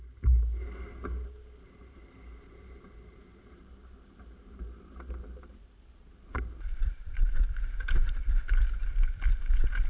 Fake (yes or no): yes